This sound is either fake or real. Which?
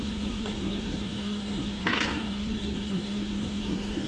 fake